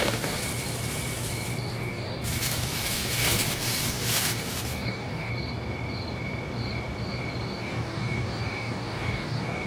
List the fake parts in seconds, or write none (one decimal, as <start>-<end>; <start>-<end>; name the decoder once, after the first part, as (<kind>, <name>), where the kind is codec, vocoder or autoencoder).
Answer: 0.0-0.4 (codec, DAC); 1.7-5.3; 7.6-9.7